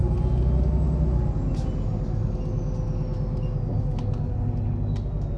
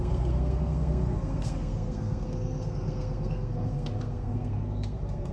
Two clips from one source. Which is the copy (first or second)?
second